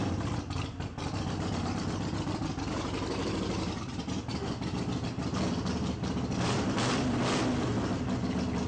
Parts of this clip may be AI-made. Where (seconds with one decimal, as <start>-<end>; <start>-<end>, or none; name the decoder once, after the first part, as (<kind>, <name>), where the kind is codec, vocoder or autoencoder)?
0.0-7.7 (vocoder, BigVGAN v2)